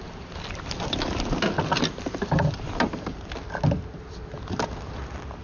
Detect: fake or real real